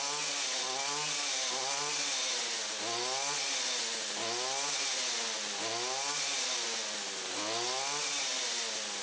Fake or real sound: real